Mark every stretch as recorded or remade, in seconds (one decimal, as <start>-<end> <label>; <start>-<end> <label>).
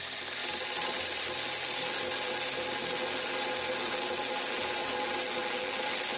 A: 0.0-6.2 recorded